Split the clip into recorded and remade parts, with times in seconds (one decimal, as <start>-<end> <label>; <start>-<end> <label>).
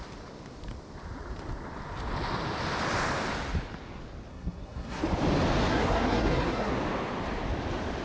0.0-4.3 recorded; 4.3-5.0 remade; 5.0-5.7 recorded; 5.7-6.7 remade; 6.7-8.0 recorded